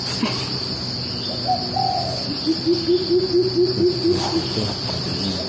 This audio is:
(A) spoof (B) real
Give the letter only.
B